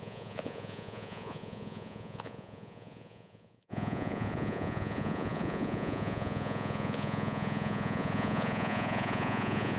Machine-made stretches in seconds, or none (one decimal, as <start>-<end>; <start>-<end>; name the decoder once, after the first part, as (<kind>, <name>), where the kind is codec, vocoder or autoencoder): 0.0-9.8 (vocoder, Vocos)